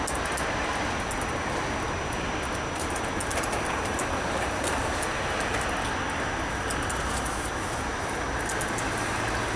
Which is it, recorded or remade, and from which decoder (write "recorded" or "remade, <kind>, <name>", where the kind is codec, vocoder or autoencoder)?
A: recorded